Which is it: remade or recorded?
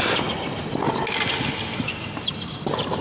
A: recorded